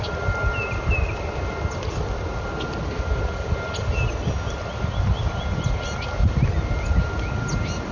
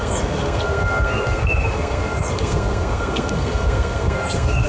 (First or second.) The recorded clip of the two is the first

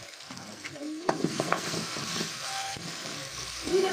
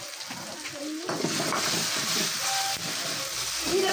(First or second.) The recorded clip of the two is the second